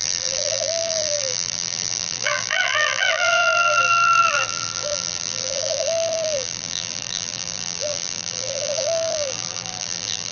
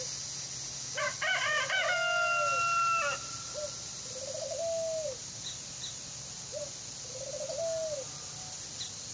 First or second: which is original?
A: second